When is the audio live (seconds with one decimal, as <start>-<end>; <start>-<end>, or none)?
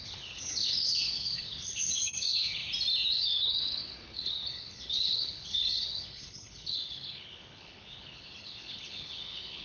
2.6-3.1